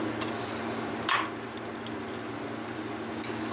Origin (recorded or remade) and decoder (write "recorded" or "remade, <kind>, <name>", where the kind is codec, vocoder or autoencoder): recorded